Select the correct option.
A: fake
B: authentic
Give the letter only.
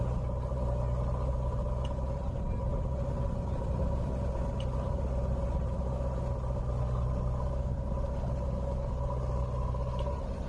B